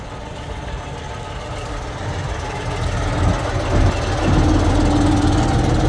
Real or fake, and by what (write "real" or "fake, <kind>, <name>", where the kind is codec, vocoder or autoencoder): real